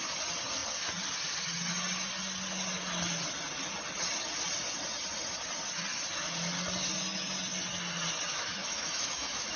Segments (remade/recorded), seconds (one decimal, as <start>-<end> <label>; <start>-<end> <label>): 0.0-8.3 recorded; 8.3-9.6 remade